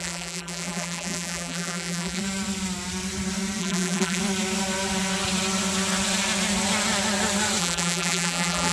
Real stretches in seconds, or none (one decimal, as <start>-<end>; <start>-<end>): 2.2-3.6; 4.2-7.6